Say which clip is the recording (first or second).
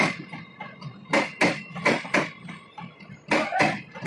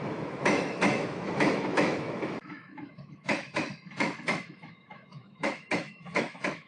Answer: first